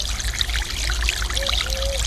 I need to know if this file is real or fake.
real